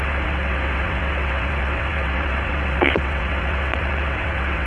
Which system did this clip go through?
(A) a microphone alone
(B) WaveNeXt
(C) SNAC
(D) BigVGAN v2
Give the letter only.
B